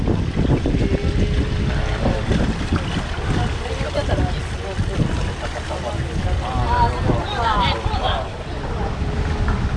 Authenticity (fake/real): real